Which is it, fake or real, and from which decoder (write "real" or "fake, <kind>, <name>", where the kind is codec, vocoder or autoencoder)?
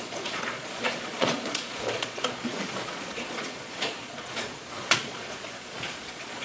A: fake, vocoder, Vocos